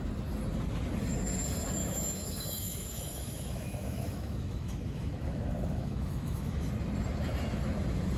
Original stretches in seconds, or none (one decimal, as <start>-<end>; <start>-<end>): 0.0-1.8; 6.7-8.2